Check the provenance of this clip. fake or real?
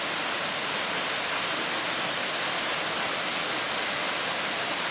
real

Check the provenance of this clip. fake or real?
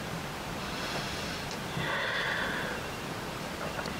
fake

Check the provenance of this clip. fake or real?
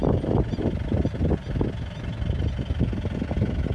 real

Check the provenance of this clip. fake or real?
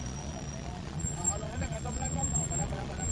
fake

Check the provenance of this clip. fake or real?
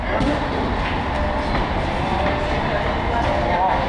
real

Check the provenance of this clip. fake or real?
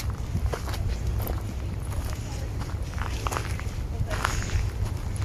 real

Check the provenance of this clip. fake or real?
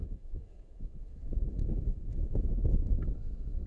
fake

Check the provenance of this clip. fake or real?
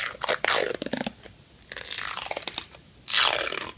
real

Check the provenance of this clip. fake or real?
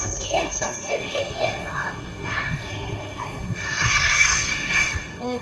fake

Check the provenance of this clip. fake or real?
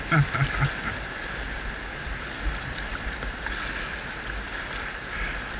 real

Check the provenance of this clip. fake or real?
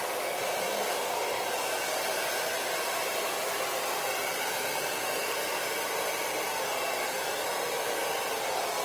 real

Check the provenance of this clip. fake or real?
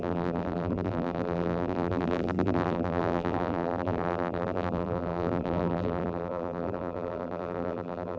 fake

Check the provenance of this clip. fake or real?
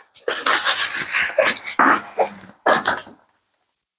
real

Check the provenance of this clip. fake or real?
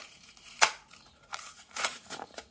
fake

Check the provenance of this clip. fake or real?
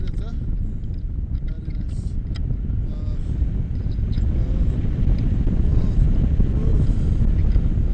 real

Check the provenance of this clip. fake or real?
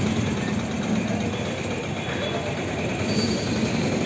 real